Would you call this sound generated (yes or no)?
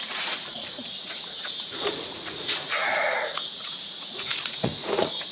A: yes